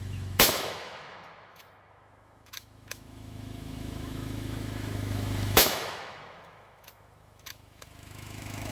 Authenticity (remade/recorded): remade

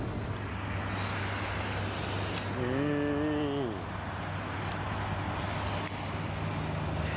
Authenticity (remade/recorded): recorded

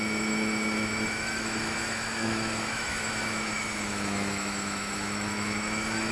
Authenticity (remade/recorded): remade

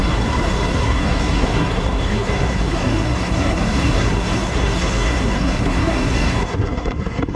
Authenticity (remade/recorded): remade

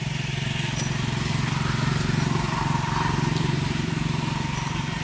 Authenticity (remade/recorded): recorded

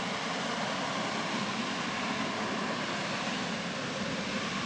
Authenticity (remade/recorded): recorded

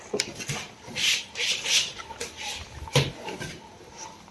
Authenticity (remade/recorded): remade